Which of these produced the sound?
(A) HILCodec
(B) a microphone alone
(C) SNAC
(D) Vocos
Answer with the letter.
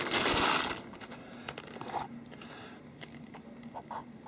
B